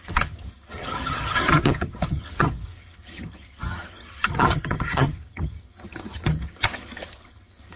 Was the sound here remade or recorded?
remade